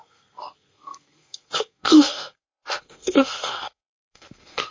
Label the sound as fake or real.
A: fake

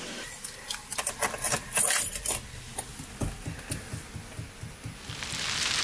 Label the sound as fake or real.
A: real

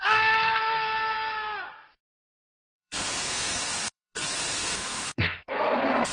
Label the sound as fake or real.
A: fake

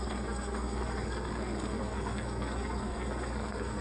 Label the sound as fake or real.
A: fake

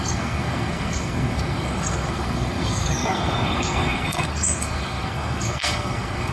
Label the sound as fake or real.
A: fake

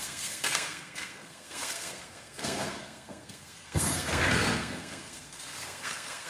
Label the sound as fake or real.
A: fake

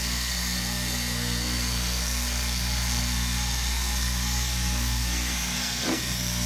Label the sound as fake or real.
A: fake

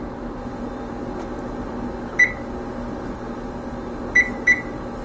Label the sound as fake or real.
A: real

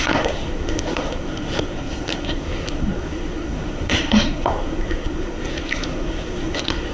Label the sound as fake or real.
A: fake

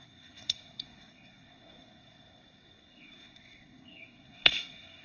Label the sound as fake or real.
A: fake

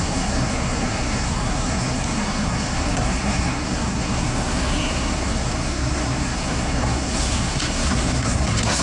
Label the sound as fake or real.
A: fake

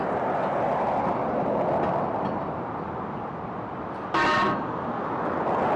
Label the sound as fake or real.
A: real